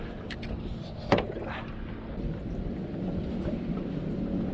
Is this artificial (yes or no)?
no